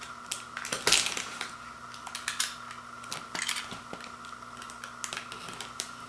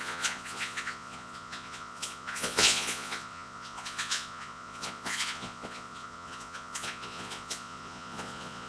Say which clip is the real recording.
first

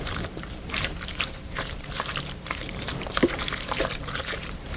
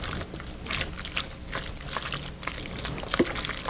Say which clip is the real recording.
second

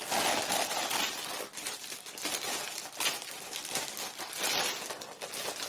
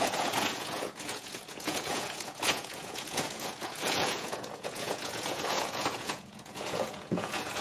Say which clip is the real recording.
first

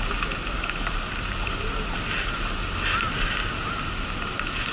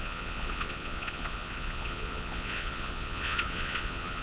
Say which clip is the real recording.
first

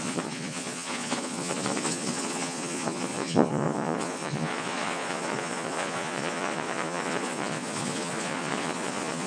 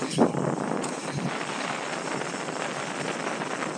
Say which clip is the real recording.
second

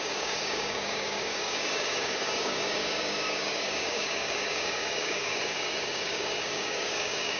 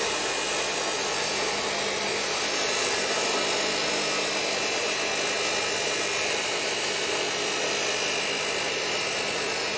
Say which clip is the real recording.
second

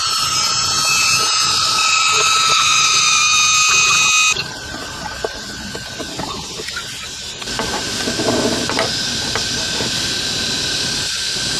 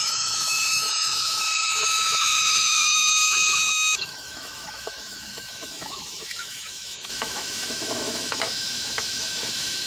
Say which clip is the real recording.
first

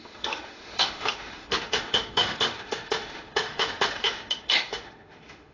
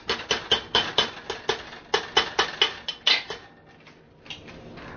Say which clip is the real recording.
second